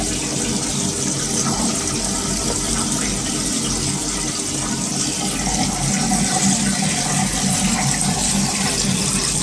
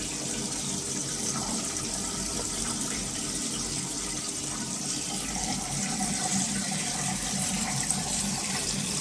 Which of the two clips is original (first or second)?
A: first